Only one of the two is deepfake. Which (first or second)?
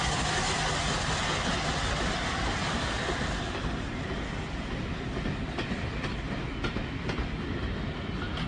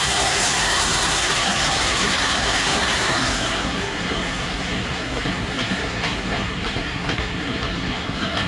second